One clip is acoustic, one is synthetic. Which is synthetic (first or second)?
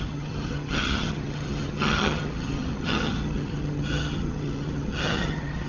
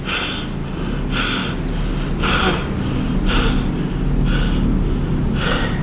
first